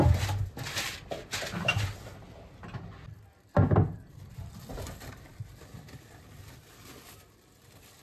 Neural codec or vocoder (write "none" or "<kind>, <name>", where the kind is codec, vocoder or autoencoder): none